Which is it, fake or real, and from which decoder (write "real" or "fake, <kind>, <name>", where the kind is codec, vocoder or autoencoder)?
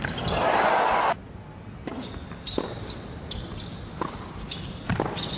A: real